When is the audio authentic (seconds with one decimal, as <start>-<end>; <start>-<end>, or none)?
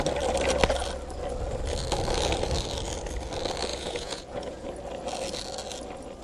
0.0-3.7; 4.7-6.2